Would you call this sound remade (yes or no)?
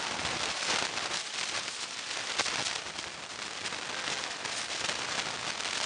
no